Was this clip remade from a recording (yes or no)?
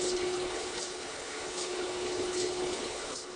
yes